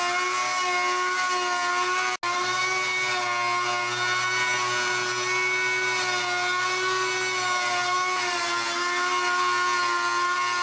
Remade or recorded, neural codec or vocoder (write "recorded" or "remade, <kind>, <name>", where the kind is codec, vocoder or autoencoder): recorded